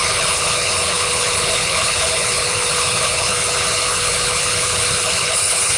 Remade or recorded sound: remade